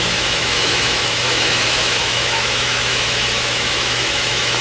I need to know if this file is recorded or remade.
remade